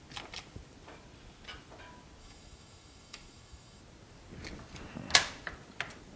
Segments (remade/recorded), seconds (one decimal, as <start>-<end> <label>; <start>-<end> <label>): 0.0-2.2 recorded; 2.2-3.8 remade; 3.8-6.2 recorded